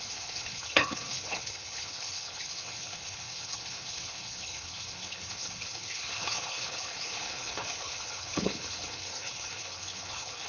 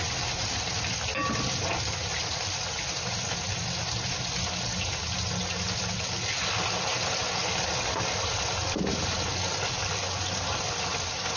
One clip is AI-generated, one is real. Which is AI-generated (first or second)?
first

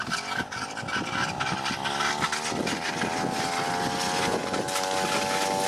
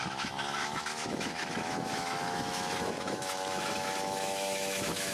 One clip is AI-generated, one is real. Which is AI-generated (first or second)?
second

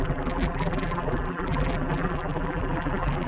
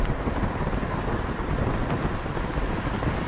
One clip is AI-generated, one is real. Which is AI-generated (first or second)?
first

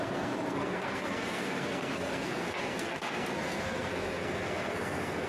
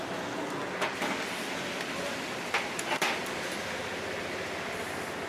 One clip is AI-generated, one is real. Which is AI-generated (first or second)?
first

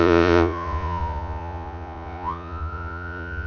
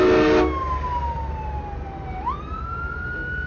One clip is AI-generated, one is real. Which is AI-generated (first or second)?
first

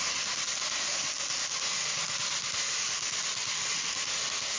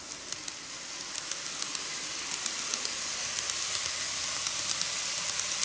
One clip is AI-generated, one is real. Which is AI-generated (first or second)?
second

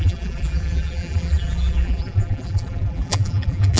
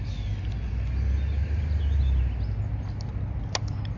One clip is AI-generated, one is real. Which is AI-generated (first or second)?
first